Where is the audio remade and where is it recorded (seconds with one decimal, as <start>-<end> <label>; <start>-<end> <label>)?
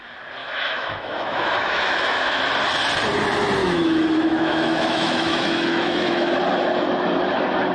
0.0-0.4 recorded; 0.4-2.4 remade; 2.4-3.6 recorded; 3.6-6.3 remade; 6.3-7.7 recorded